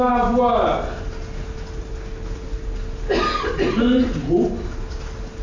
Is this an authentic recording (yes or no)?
yes